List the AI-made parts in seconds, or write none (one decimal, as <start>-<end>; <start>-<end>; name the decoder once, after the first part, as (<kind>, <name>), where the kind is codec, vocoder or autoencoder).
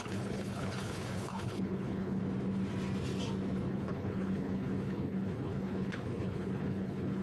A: 0.0-2.2 (codec, HILCodec); 3.7-7.2